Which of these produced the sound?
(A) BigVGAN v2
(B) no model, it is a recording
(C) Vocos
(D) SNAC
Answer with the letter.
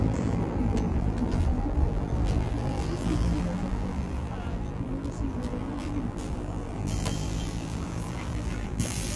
A